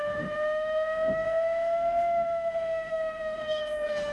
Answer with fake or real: fake